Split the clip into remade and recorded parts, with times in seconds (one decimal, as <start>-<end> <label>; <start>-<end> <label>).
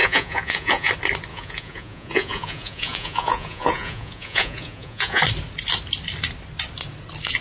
0.0-0.9 remade; 0.9-1.3 recorded; 1.3-5.2 remade; 5.2-7.4 recorded